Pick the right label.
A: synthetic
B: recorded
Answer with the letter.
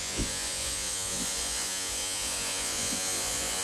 A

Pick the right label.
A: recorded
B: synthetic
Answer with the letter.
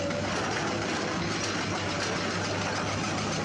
A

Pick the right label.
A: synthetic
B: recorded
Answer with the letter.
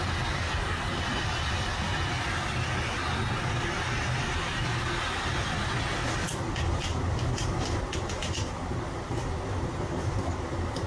B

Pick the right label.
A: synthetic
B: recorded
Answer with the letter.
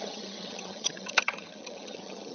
A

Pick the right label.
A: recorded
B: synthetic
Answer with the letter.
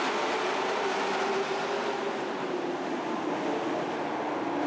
A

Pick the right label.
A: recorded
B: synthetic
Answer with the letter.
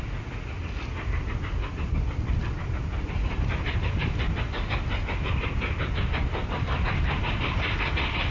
A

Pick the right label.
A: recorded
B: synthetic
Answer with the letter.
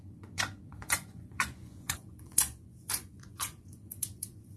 B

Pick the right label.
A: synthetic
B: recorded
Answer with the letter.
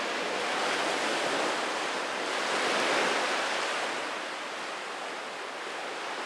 B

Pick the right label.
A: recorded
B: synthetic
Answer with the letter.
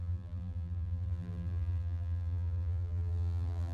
B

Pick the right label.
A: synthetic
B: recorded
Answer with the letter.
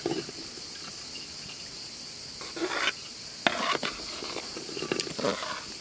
B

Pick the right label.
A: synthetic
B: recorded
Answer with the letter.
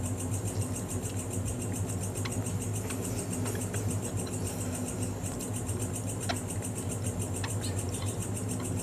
B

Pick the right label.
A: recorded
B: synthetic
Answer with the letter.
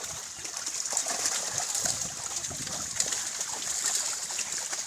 A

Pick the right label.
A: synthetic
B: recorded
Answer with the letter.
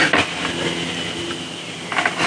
B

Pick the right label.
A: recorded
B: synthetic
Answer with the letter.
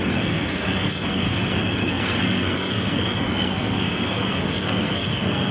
B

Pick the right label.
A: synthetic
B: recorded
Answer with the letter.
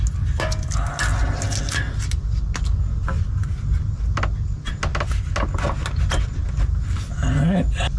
B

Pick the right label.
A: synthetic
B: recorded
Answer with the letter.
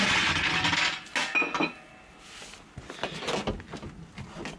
B